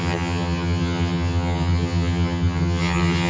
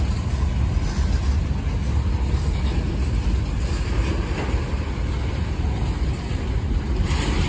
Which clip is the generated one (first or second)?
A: first